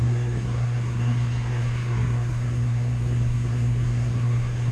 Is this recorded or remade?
remade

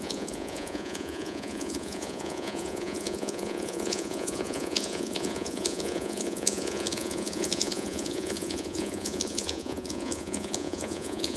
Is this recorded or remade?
remade